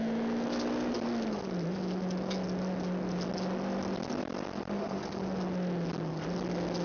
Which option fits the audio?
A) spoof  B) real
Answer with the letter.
B